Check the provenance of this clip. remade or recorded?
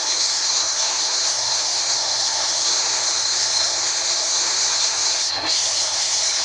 remade